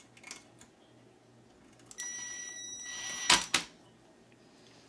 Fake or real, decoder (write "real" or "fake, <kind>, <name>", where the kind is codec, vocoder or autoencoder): real